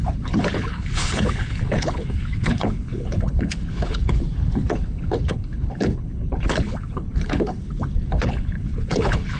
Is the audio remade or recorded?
remade